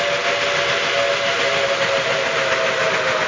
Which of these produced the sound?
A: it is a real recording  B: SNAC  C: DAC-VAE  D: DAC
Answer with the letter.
A